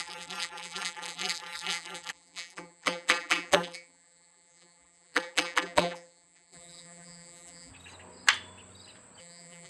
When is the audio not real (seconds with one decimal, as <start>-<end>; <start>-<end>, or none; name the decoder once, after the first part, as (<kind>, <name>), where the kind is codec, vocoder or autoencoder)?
0.0-7.7 (vocoder, BigVGAN v2); 9.2-9.7